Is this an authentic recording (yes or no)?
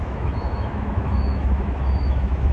no